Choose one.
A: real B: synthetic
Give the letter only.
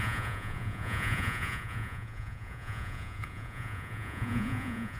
B